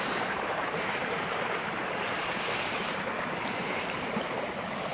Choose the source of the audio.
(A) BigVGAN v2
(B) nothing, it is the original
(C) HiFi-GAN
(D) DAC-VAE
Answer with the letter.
A